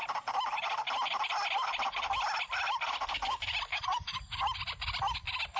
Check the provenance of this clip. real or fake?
real